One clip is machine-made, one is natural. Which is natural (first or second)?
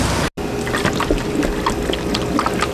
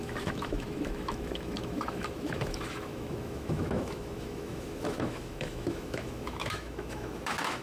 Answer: first